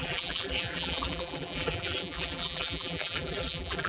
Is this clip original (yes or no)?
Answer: no